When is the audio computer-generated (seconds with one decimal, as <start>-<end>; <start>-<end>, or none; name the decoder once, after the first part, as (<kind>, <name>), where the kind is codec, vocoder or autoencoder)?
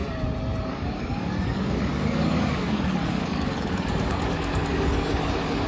0.6-5.7 (codec, DAC)